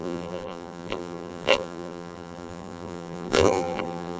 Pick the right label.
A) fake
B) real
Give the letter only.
A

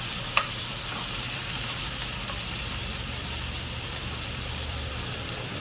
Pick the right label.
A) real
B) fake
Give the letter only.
B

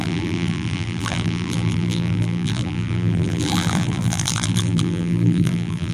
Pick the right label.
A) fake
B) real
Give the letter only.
A